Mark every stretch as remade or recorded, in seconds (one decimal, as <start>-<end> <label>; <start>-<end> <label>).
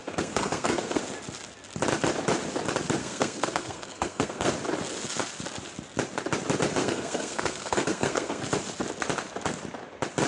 0.0-1.0 remade; 1.0-3.0 recorded; 3.0-4.5 remade; 4.5-6.8 recorded; 6.8-8.4 remade; 8.4-10.3 recorded